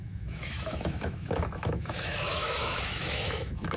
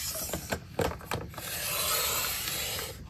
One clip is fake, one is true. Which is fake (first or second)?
first